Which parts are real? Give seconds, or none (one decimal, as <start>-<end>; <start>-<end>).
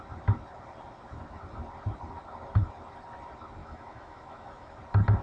0.0-3.6; 4.7-5.2